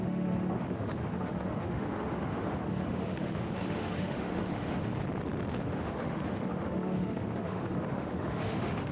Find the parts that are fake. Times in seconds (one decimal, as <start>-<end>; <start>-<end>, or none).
0.0-4.9; 5.6-8.9